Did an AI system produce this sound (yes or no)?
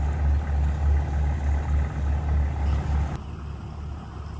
no